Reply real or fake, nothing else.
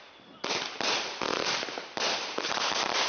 real